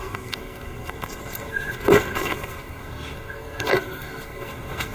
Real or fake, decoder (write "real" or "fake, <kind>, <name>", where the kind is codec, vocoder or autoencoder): fake, codec, SNAC